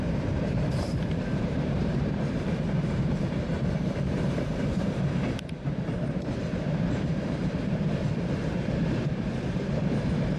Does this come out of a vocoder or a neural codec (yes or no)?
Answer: yes